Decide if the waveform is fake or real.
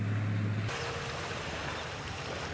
real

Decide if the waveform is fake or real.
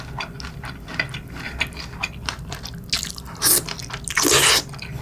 real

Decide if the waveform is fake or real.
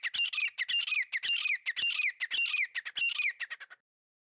real